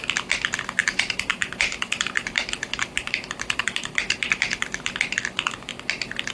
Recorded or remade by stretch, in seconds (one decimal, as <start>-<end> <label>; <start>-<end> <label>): 0.0-0.8 recorded; 0.8-4.6 remade; 4.6-6.3 recorded